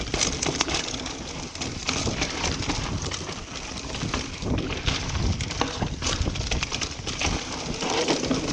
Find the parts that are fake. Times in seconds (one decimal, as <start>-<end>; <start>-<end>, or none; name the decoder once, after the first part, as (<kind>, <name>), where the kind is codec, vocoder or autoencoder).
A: none